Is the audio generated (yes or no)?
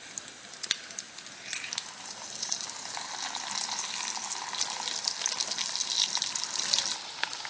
no